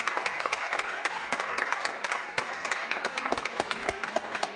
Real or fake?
fake